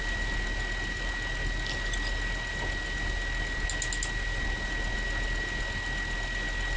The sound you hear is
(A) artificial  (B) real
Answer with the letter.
B